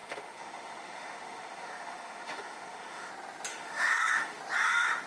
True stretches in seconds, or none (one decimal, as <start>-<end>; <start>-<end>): 3.1-3.5; 4.4-5.1